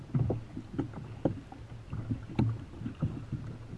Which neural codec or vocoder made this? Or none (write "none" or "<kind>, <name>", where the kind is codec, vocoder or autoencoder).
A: none